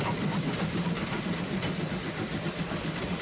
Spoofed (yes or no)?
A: yes